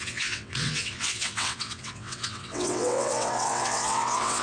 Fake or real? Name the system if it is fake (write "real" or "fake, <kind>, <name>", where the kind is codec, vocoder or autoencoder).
fake, vocoder, WaveNeXt